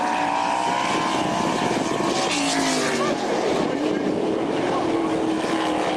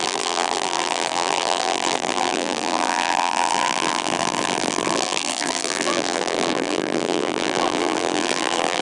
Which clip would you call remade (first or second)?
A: second